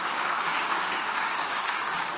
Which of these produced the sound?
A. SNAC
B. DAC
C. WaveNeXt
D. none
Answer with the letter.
B